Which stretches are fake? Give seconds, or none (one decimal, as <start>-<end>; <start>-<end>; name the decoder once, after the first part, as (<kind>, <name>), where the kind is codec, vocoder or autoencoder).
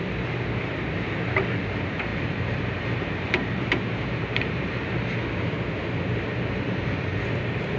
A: 0.7-1.4 (vocoder, BigVGAN v2); 2.1-5.1